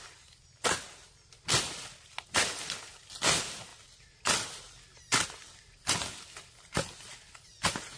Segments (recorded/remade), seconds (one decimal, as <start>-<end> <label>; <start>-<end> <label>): 0.0-8.0 recorded

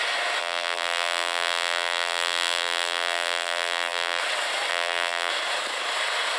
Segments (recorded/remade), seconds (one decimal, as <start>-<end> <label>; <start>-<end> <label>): 0.0-0.4 recorded; 0.4-4.2 remade; 4.2-4.7 recorded; 4.7-5.3 remade; 5.3-6.4 recorded

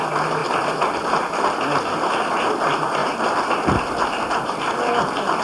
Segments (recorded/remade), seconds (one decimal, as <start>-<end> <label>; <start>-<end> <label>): 0.0-5.4 recorded

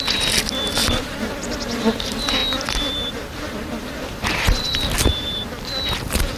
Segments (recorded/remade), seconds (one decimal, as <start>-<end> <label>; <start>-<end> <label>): 0.0-2.4 remade; 2.4-2.9 recorded; 2.9-6.4 remade

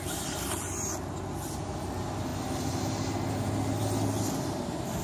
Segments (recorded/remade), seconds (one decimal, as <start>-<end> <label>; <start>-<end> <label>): 0.0-5.0 recorded

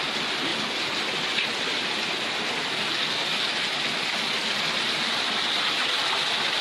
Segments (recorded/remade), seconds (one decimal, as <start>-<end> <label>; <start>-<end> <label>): 0.0-0.5 recorded; 0.5-2.5 remade; 2.5-6.6 recorded